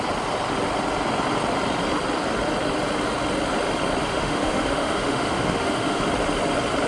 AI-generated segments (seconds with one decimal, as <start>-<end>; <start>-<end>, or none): 4.1-6.0